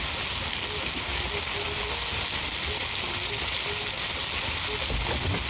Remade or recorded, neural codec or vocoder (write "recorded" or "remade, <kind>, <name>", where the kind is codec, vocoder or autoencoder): recorded